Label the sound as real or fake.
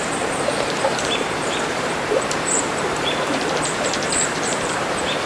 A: fake